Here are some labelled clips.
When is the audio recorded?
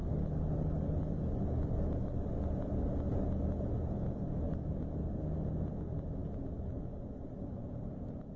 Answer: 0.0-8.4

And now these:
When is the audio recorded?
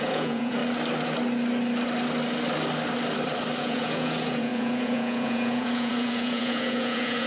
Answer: 0.6-3.6